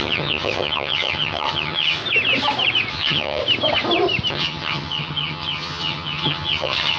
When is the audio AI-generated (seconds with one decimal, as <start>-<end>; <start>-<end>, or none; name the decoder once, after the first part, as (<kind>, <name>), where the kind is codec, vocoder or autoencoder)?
0.0-2.0 (vocoder, HiFi-GAN); 2.9-3.4; 4.3-7.0